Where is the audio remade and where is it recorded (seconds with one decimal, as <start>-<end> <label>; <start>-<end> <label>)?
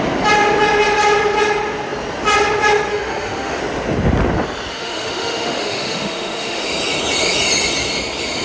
0.0-2.9 recorded; 2.9-3.6 remade; 3.6-4.7 recorded; 4.7-6.6 remade; 6.6-8.4 recorded